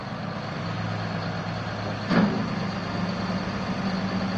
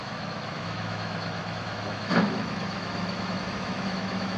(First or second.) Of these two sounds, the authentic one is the first